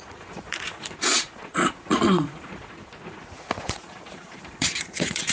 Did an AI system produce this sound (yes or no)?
yes